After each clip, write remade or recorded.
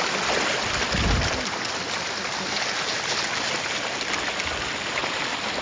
recorded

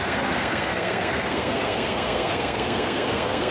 remade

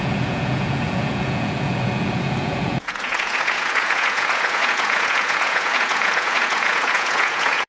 remade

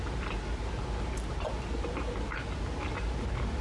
recorded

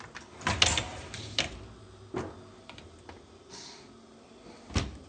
recorded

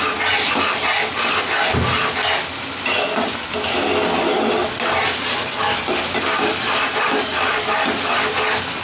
recorded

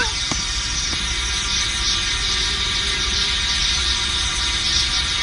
recorded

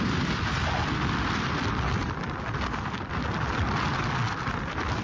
recorded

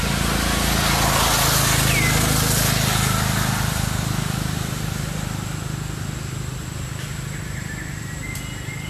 recorded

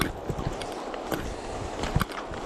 recorded